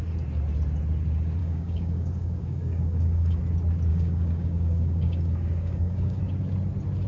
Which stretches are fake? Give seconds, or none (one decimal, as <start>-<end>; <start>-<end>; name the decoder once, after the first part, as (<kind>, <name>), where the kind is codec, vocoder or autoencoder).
1.4-3.4 (codec, DAC); 3.9-6.2